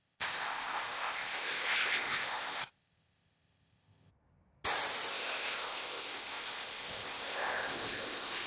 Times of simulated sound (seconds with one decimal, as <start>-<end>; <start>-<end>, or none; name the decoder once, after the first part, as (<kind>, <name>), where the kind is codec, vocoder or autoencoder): 0.0-4.1 (codec, ZipCodec); 5.1-8.5